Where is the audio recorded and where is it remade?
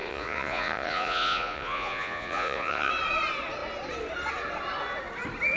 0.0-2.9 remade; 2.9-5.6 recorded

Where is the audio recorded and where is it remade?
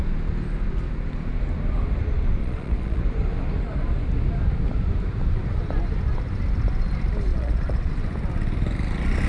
0.0-2.4 recorded; 2.4-3.0 remade; 3.0-7.3 recorded; 7.3-7.9 remade; 7.9-9.3 recorded